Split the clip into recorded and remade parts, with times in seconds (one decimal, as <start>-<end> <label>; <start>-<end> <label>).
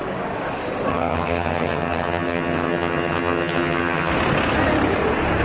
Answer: 0.0-0.9 recorded; 0.9-4.1 remade; 4.1-5.4 recorded